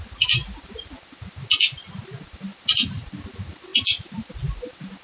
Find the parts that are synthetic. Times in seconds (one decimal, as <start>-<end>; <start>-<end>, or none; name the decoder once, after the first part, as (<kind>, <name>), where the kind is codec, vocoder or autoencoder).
none